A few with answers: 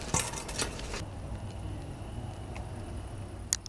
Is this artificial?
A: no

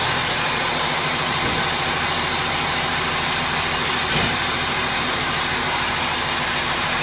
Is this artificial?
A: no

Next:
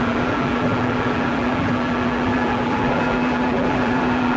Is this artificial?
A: yes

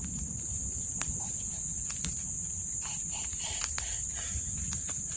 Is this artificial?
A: no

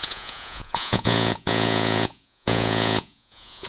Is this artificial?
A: yes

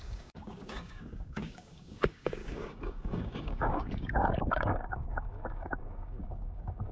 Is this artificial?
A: yes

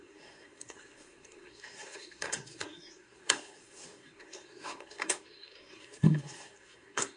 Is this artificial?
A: yes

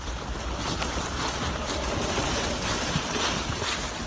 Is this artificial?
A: no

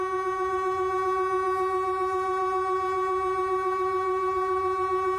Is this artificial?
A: no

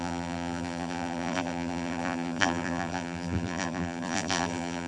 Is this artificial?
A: yes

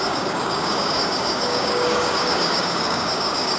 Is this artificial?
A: yes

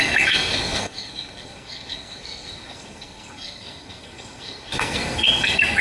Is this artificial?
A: yes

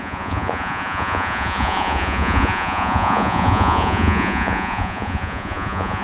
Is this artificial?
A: yes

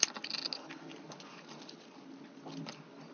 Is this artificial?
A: no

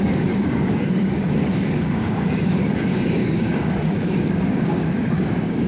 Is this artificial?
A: yes